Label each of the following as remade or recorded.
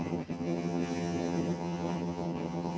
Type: remade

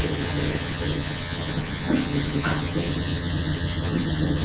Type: remade